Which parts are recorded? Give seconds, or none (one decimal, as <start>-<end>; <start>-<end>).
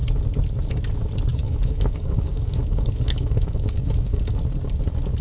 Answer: 0.0-1.3; 4.4-5.2